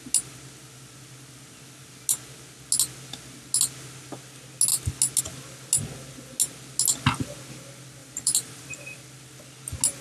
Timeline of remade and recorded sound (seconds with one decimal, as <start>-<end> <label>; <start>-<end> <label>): 0.0-8.0 recorded; 8.0-9.0 remade; 9.0-10.0 recorded